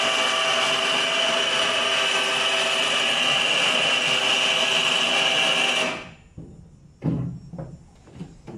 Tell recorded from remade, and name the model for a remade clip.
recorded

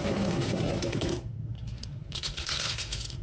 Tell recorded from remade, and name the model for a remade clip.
remade, codec, SNAC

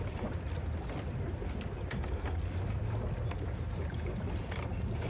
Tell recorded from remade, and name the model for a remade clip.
recorded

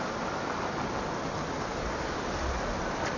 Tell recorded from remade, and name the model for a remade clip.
recorded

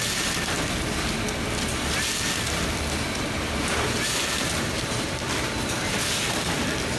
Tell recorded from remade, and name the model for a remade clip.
remade, vocoder, BigVGAN v2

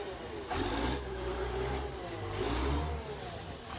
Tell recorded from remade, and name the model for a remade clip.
recorded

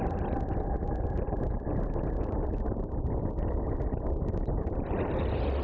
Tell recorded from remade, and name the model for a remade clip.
recorded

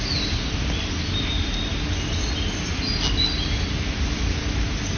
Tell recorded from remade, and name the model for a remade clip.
recorded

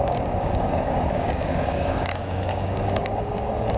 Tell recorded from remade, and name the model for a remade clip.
remade, codec, DAC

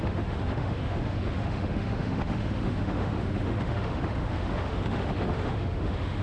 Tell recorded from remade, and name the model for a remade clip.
remade, autoencoder, DAC-VAE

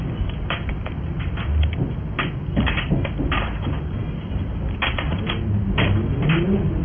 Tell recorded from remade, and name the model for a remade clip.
recorded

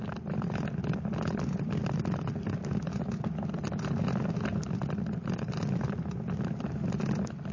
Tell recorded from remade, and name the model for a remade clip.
recorded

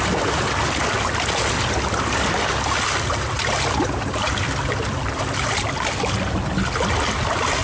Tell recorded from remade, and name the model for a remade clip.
recorded